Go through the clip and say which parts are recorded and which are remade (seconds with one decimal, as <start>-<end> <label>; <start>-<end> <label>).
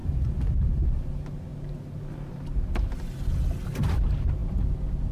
0.0-5.1 recorded